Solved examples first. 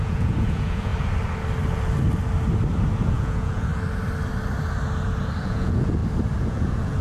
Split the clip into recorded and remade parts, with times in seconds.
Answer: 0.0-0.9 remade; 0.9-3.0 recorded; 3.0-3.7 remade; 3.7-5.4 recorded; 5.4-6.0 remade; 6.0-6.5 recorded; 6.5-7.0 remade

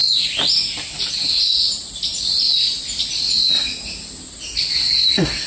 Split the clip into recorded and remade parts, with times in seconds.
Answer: 0.0-5.5 recorded

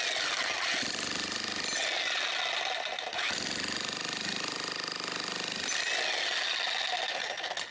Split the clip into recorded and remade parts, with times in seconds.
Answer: 0.0-7.7 recorded

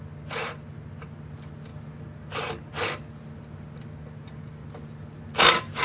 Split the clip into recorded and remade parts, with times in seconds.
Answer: 0.0-5.8 recorded

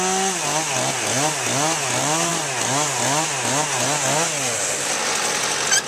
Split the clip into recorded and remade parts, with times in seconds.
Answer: 0.0-5.9 recorded

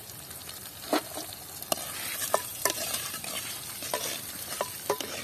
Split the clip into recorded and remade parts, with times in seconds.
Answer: 0.0-2.5 recorded; 2.5-3.1 remade; 3.1-5.2 recorded